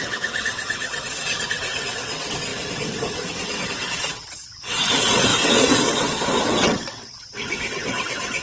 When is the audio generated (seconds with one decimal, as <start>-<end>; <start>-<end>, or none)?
0.0-8.4